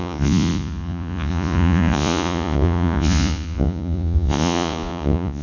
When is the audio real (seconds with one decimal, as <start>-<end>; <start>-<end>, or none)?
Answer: none